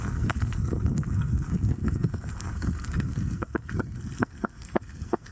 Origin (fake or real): fake